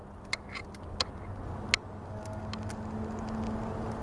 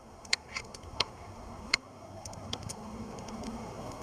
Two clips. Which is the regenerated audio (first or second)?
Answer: second